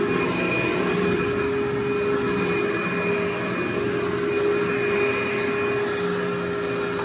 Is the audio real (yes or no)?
yes